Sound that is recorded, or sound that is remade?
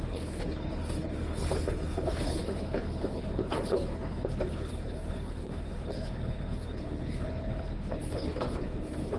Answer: remade